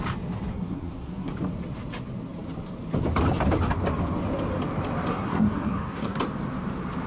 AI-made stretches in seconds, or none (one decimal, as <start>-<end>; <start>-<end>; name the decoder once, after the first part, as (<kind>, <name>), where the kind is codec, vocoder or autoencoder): 0.5-1.3 (codec, SNAC); 5.1-6.2